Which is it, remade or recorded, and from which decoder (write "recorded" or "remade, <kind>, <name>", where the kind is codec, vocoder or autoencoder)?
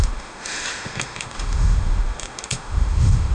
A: remade, autoencoder, DAC-VAE